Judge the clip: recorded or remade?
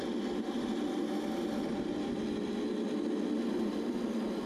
recorded